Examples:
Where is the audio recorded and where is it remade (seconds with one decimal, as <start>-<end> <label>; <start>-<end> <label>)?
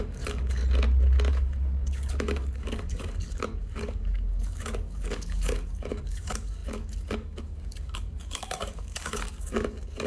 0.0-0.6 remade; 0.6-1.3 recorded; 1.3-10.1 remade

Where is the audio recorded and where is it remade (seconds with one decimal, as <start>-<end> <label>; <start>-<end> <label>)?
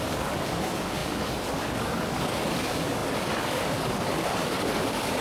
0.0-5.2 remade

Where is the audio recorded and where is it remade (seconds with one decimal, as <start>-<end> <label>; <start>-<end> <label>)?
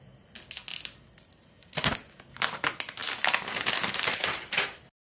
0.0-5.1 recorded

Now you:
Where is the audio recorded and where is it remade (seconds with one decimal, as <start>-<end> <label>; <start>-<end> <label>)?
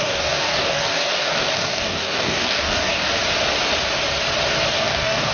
0.0-3.1 remade; 3.1-4.7 recorded; 4.7-5.3 remade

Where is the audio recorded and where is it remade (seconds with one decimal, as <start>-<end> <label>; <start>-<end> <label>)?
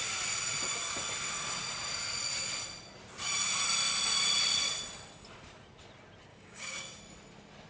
0.0-6.3 recorded; 6.3-7.0 remade; 7.0-7.7 recorded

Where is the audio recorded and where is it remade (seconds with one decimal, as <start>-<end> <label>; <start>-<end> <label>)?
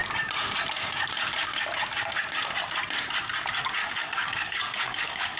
0.0-3.8 recorded; 3.8-5.4 remade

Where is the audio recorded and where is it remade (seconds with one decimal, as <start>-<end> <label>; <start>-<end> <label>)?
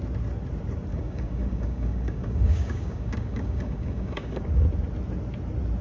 0.0-0.9 recorded; 0.9-4.4 remade; 4.4-5.8 recorded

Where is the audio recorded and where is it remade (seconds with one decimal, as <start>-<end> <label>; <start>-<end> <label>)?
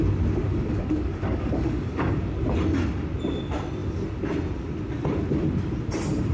0.0-0.5 recorded; 0.5-2.1 remade; 2.1-6.3 recorded